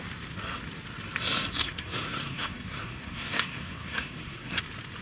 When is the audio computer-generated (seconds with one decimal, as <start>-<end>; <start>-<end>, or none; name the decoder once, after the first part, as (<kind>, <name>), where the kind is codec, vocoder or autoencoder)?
1.6-4.6 (codec, SNAC)

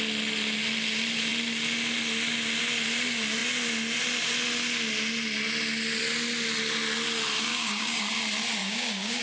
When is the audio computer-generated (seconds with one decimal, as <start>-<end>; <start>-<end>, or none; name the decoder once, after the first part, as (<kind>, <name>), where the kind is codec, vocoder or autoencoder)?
7.5-8.0 (codec, DAC); 8.6-9.2

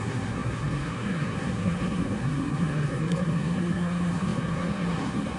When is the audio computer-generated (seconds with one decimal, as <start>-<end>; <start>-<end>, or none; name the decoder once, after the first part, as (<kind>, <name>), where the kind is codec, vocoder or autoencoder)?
0.0-5.4 (codec, SNAC)